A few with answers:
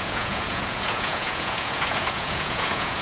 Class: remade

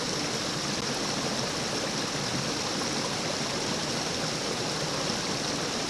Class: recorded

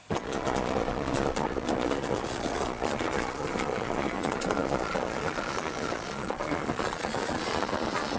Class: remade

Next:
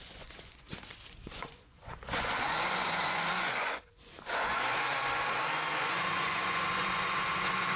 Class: remade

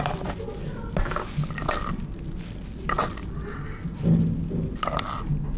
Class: recorded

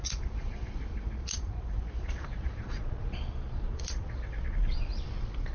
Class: remade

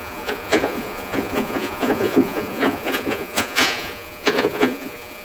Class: remade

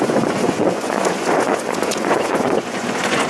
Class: remade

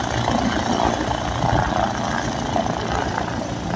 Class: recorded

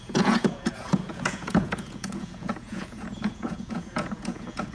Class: remade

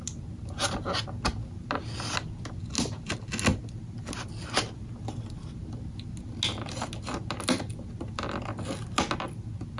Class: recorded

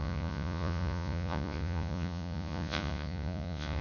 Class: remade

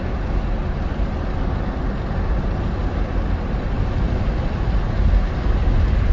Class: recorded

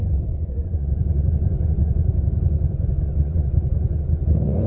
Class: remade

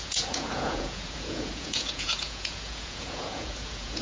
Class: remade